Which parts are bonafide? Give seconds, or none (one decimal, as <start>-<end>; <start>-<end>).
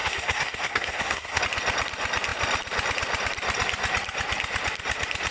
1.4-5.3